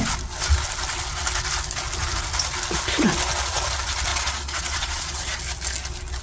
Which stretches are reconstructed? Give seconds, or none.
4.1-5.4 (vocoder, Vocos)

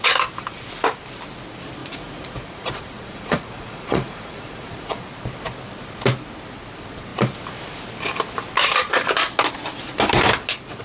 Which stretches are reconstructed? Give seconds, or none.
1.8-5.0 (vocoder, Vocos)

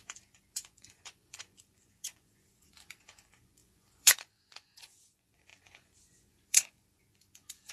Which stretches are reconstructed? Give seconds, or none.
0.0-7.7 (vocoder, Vocos)

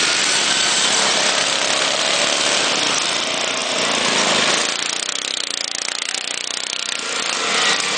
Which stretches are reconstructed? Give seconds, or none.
none

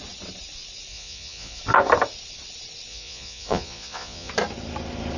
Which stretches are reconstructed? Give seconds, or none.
0.9-1.6 (vocoder, Vocos); 2.9-4.3

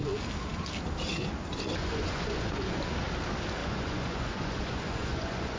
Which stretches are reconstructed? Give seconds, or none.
1.8-2.8 (vocoder, Vocos); 3.6-5.6

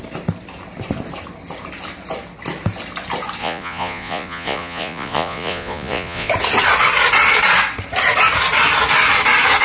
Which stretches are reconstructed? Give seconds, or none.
3.4-6.3 (vocoder, Vocos)

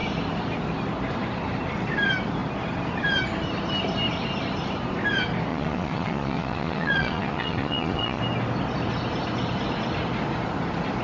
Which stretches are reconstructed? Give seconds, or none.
5.5-8.2 (vocoder, Vocos)